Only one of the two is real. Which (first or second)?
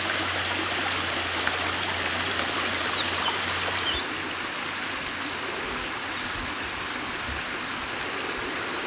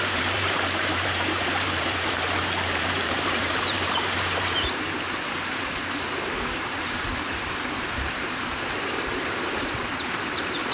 first